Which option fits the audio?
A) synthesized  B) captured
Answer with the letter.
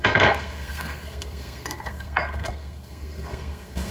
A